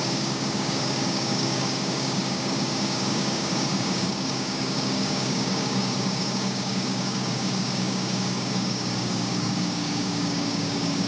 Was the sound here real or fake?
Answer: fake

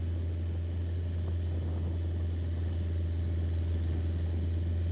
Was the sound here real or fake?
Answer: real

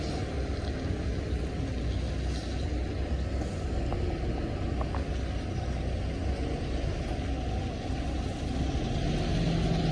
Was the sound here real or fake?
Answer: real